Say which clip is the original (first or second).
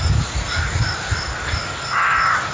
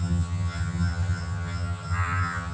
first